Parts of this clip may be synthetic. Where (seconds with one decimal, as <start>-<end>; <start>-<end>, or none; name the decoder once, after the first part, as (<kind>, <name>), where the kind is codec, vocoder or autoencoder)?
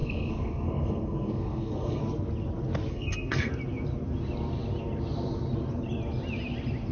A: 0.0-2.0 (codec, SNAC); 2.9-3.5